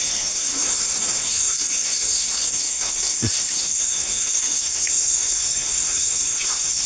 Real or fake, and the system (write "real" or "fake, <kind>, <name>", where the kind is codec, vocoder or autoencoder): fake, codec, SNAC